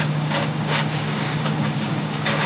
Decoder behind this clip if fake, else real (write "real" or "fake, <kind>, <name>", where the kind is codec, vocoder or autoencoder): fake, codec, DAC